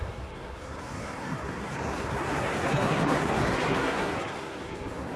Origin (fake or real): fake